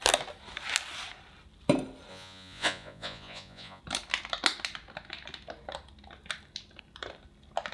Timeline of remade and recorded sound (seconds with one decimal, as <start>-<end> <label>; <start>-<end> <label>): 0.0-2.1 recorded; 2.1-3.8 remade; 3.8-7.7 recorded